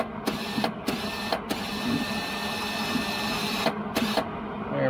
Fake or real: real